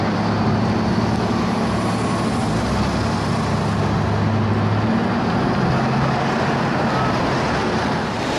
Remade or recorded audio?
recorded